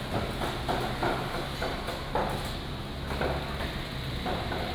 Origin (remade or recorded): recorded